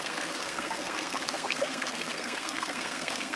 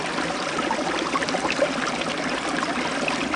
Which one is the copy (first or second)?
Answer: first